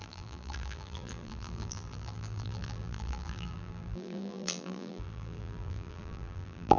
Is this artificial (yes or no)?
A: yes